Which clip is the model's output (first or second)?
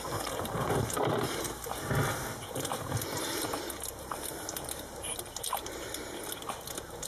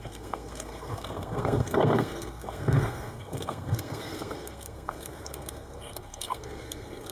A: second